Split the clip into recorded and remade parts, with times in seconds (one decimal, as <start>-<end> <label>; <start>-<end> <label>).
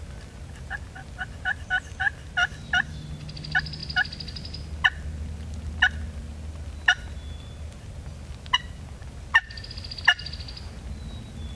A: 0.0-11.6 recorded